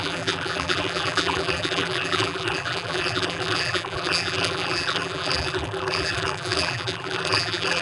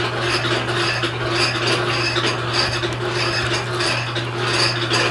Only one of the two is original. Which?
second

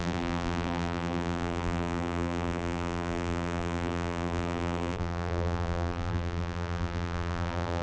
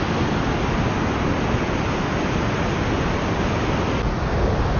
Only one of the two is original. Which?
second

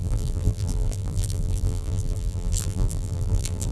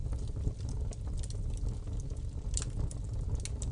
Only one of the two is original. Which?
second